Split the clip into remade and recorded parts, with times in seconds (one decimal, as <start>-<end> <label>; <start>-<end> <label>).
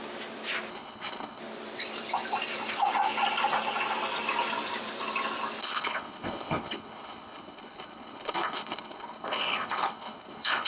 0.0-0.7 recorded; 0.7-1.4 remade; 1.4-5.6 recorded; 5.6-10.7 remade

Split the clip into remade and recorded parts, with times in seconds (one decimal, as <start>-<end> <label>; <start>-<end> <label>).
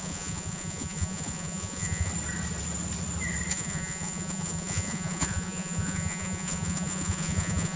0.0-2.1 remade; 2.1-3.5 recorded; 3.5-7.8 remade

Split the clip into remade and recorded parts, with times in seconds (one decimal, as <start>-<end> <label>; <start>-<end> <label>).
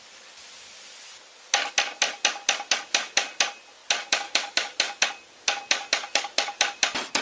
0.0-7.2 recorded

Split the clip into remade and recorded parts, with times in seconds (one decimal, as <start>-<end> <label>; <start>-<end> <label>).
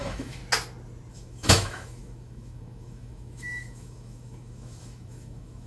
0.0-0.4 remade; 0.4-1.1 recorded; 1.1-5.7 remade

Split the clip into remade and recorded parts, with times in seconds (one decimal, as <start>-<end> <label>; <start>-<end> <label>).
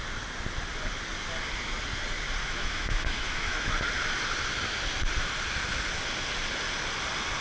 0.0-2.4 recorded; 2.4-3.7 remade; 3.7-7.4 recorded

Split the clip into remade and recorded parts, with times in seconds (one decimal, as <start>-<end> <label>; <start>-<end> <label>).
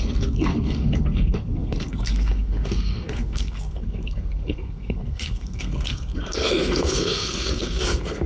0.0-8.3 remade